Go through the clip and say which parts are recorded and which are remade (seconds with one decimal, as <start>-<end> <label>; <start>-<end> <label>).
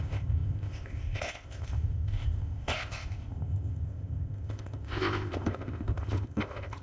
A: 0.0-6.8 remade